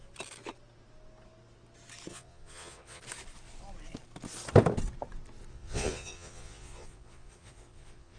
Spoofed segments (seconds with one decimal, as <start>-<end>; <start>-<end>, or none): 2.1-3.0; 5.5-8.2